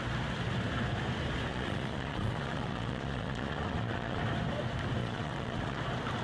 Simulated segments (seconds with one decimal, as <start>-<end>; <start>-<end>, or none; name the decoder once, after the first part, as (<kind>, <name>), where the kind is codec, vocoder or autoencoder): 1.5-4.2 (vocoder, Vocos); 5.0-5.8